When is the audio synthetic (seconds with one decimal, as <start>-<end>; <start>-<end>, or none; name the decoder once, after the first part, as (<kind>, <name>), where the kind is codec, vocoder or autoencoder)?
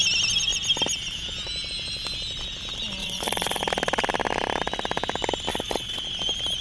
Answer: 3.0-3.6 (vocoder, Vocos); 5.5-6.0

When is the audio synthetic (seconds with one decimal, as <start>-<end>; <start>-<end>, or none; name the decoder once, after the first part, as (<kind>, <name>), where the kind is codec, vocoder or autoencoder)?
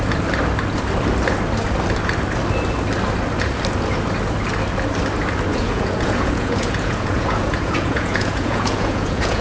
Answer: 5.5-9.4 (vocoder, Vocos)